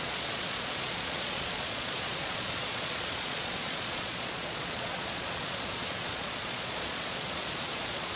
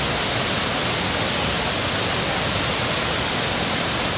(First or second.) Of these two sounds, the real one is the second